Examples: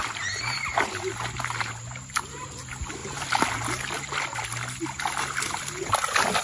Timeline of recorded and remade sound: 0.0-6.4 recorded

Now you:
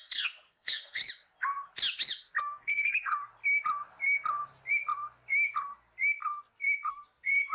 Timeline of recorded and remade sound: 0.0-1.0 remade; 1.0-2.4 recorded; 2.4-3.2 remade; 3.2-6.9 recorded; 6.9-7.5 remade

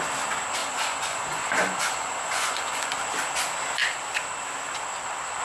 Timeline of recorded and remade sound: 0.0-0.6 recorded; 0.6-2.9 remade; 2.9-5.4 recorded

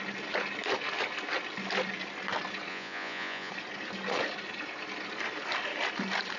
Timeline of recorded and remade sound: 0.0-2.7 recorded; 2.7-3.5 remade; 3.5-6.4 recorded

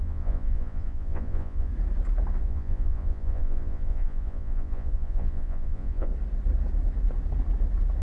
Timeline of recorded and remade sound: 0.0-1.7 remade; 1.7-2.4 recorded; 2.4-6.1 remade; 6.1-8.0 recorded

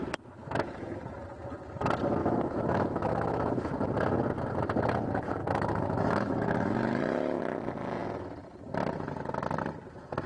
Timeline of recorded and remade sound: 0.0-0.4 recorded; 0.4-1.0 remade; 1.0-2.2 recorded; 2.2-3.7 remade; 3.7-5.4 recorded; 5.4-7.4 remade; 7.4-10.3 recorded

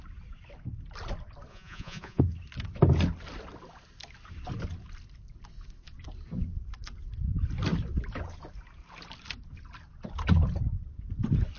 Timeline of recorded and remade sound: 0.0-1.5 recorded; 1.5-2.2 remade; 2.2-11.6 recorded